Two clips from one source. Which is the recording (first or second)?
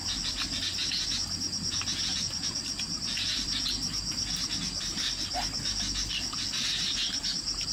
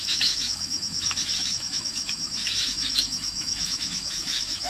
first